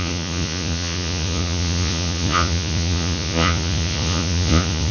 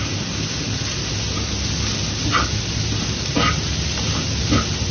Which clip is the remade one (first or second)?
first